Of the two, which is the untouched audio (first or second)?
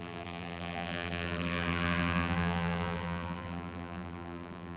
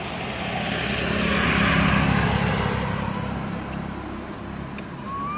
second